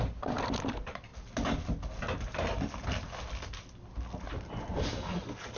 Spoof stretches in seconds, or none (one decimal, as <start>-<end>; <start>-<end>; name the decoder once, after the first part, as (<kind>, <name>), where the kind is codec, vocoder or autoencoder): none